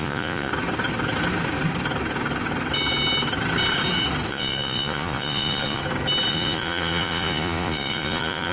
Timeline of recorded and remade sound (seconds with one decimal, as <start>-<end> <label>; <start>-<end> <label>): 0.0-0.5 remade; 0.5-4.3 recorded; 4.3-5.8 remade; 5.8-6.3 recorded; 6.3-8.5 remade